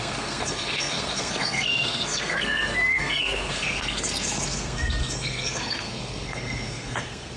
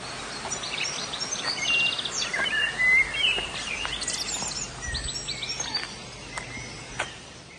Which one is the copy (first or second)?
first